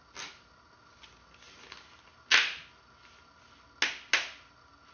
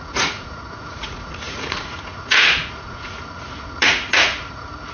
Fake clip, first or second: second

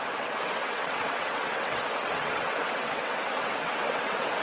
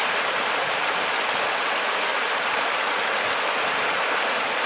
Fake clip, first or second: first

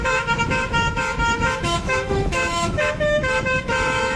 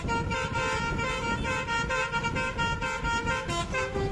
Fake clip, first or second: first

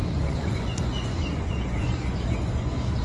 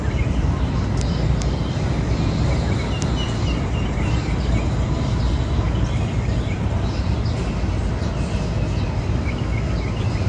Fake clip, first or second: first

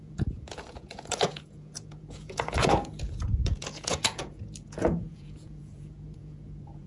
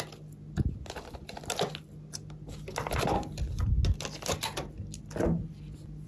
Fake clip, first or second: first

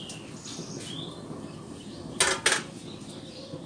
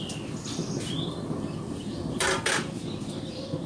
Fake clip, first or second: second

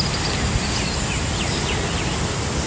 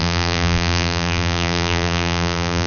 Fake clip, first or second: second